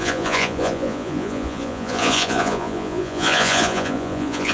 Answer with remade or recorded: remade